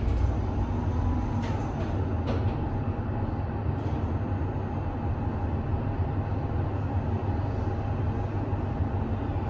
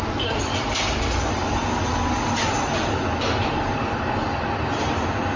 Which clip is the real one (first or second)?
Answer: first